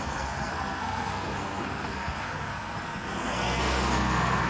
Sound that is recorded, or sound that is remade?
remade